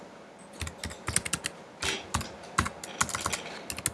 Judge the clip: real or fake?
real